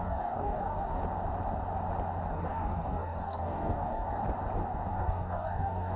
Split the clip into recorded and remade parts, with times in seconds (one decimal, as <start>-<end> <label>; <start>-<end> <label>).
0.0-1.0 remade; 1.0-2.3 recorded; 2.3-4.2 remade; 4.2-4.9 recorded; 4.9-6.0 remade